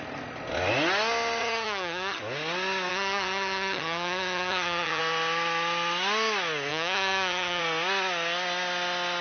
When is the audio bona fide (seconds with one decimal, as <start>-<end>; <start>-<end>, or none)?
0.0-1.4; 2.2-2.9; 5.0-6.7; 7.6-9.2